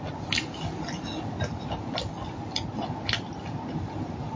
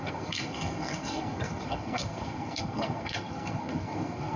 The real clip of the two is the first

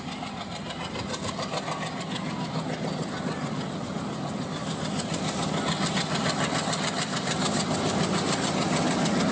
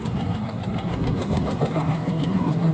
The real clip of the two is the first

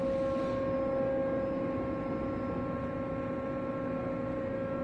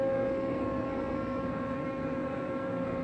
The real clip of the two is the first